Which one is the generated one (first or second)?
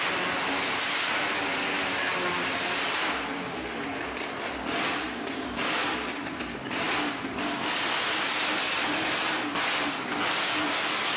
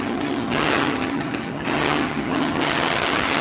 second